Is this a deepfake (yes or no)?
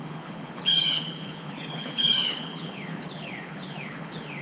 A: yes